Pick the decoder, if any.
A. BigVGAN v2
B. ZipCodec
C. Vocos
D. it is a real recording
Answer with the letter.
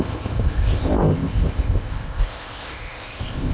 B